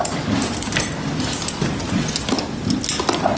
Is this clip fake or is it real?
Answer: real